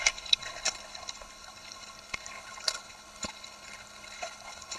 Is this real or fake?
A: fake